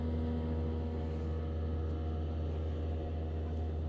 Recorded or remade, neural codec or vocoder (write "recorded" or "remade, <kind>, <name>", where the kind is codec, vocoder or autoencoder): recorded